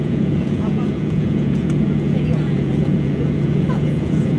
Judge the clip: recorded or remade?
remade